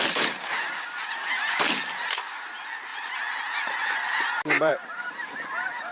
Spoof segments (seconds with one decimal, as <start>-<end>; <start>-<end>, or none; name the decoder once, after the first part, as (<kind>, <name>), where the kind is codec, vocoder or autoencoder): 0.0-4.7 (vocoder, BigVGAN v2)

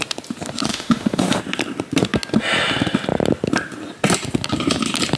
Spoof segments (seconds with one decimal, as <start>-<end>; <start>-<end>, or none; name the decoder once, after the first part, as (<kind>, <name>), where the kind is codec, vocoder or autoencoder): 0.7-1.4 (autoencoder, DAC-VAE)

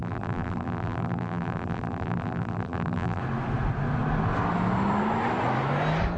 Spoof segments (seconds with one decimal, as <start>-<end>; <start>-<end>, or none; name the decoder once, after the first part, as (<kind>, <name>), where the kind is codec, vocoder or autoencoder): 0.0-3.2 (vocoder, BigVGAN v2)